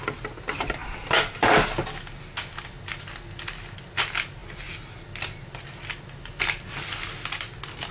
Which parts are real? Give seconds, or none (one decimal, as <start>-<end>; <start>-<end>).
0.0-7.9